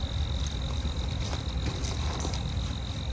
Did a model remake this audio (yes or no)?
no